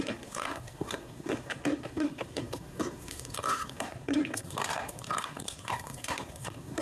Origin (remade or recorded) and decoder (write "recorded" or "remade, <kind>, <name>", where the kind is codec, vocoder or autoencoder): remade, codec, SNAC